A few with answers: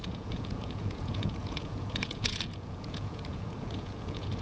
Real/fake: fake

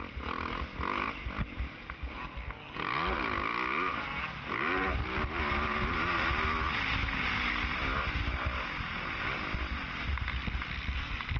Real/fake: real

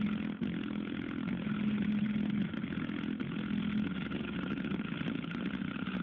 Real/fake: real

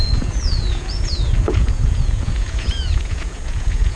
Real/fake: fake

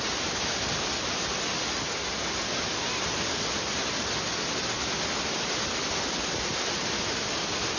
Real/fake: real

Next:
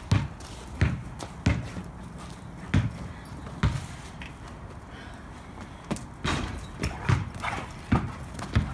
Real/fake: real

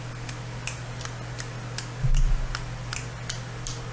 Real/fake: real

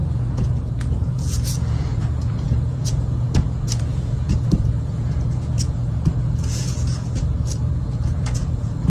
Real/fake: fake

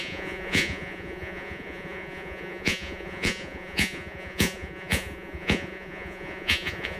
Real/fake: fake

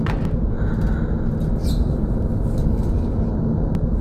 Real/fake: real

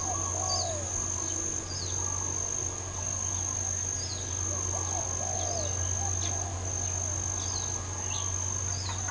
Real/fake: real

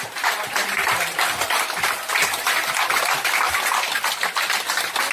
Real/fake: real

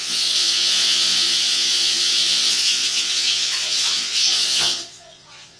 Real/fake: fake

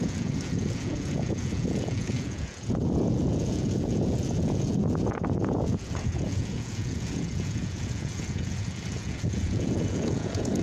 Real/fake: fake